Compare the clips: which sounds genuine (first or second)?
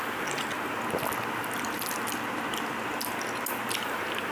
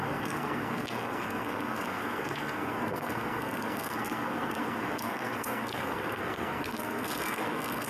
first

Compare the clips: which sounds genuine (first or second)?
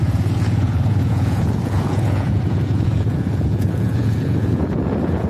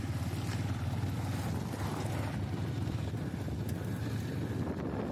second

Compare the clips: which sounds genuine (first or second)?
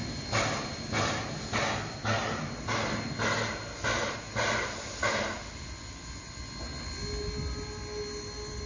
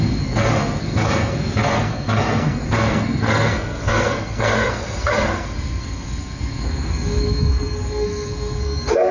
first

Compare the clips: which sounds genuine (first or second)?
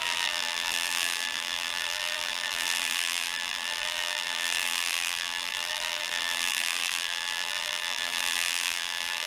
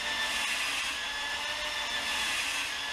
second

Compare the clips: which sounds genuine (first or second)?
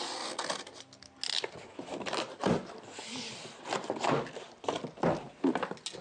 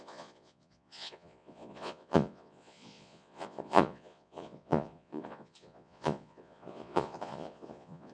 first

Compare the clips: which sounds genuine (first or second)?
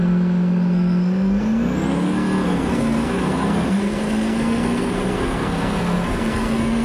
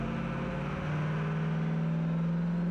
second